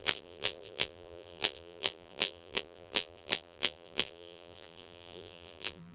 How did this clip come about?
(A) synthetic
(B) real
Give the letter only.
A